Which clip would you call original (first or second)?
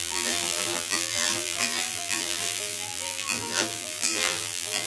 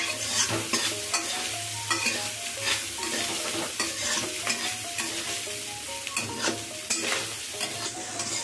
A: second